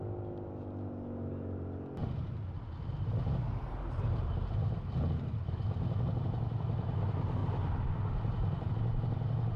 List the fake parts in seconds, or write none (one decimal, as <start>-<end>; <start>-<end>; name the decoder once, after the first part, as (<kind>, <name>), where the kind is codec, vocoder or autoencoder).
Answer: 2.0-5.5 (vocoder, BigVGAN v2); 7.4-8.7